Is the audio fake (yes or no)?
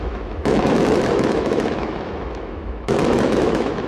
yes